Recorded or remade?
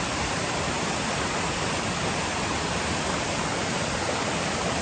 recorded